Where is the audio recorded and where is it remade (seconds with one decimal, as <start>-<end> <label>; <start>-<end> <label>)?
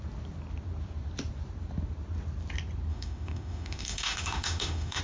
0.0-2.9 recorded; 2.9-5.0 remade